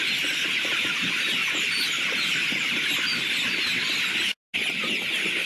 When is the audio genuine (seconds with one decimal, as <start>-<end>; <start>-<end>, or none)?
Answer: 0.0-5.5